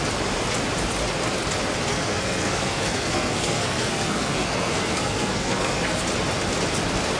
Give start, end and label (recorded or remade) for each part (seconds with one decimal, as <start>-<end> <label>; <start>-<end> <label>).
0.0-1.9 recorded; 1.9-6.0 remade; 6.0-7.2 recorded